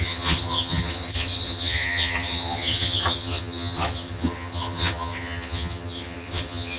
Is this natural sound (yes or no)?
no